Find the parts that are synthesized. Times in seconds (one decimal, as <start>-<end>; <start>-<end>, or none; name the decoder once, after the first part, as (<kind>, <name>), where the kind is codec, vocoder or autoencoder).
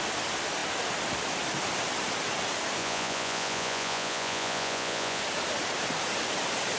2.8-5.2 (vocoder, Vocos)